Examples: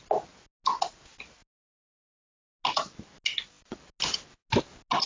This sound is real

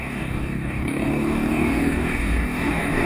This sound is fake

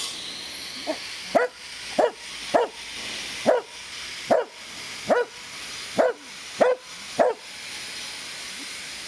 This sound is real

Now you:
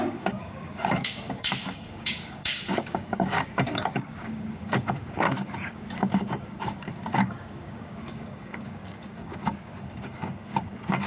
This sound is fake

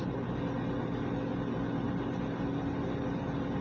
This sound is real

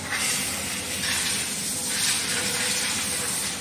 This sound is real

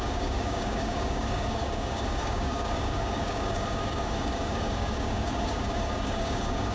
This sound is fake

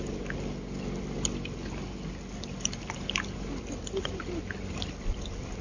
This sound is real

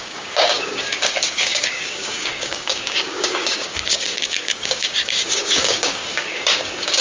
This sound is fake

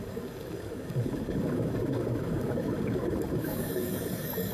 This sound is fake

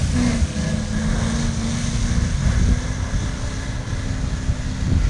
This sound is real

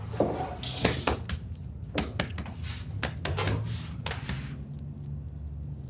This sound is real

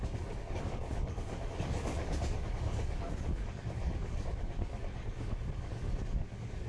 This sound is fake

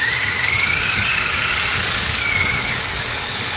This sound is fake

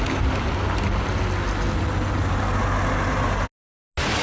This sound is real